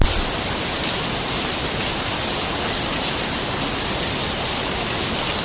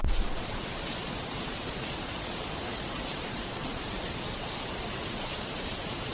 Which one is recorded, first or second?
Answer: first